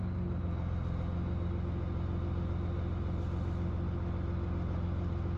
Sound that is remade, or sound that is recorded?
recorded